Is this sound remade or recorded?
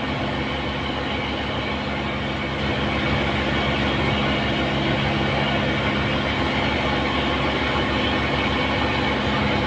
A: recorded